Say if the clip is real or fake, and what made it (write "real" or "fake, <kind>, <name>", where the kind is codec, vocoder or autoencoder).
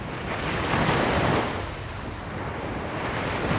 real